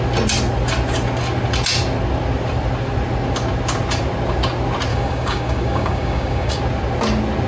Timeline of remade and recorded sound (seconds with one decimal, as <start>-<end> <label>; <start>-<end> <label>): 0.0-4.9 recorded; 4.9-6.6 remade; 6.6-7.5 recorded